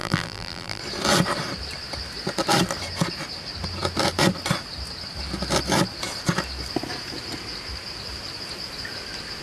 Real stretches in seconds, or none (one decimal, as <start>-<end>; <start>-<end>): 0.8-9.4